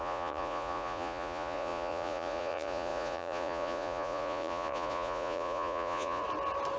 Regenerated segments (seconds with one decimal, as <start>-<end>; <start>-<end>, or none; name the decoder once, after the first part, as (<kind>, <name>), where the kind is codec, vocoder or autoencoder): 0.0-6.2 (vocoder, Vocos)